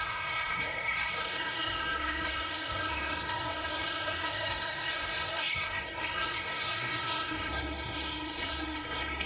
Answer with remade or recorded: remade